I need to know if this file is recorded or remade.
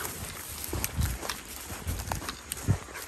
recorded